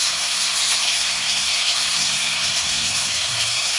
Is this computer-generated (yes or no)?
yes